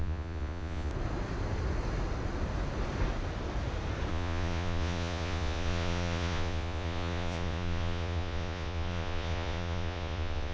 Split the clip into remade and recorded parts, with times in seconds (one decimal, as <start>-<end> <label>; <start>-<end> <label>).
0.0-0.9 remade; 0.9-4.1 recorded; 4.1-10.5 remade